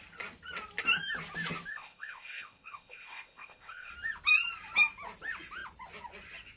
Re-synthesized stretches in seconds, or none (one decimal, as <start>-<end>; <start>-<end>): 1.7-3.9